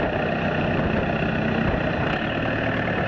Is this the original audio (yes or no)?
yes